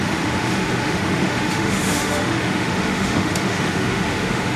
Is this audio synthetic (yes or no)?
yes